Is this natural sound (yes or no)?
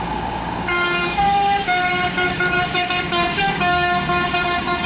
no